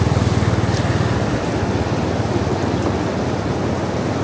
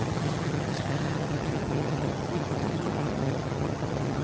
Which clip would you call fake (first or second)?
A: second